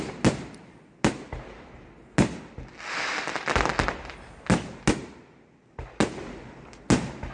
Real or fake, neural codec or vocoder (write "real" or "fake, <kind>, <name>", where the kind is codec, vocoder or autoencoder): real